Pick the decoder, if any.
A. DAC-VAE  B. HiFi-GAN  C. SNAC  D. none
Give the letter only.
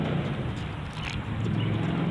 D